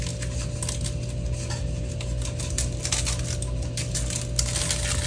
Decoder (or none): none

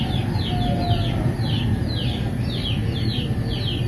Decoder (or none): none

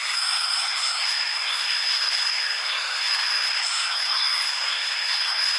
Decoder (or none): codec, SNAC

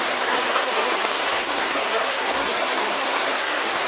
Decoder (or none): codec, SNAC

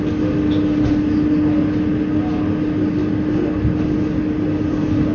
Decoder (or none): none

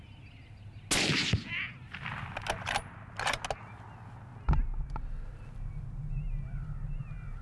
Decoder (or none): none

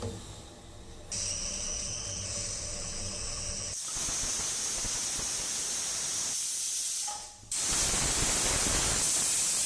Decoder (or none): none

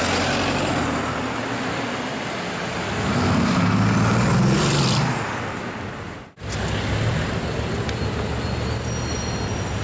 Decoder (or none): none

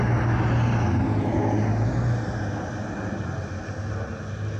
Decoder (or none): none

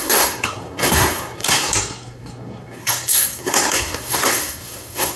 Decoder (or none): codec, SNAC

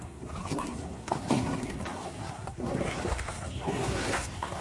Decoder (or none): codec, SNAC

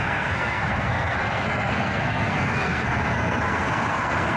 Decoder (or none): codec, SNAC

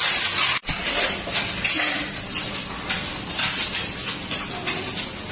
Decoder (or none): none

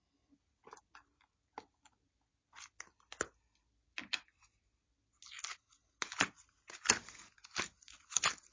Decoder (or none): none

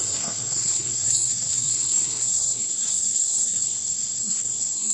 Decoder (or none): codec, SNAC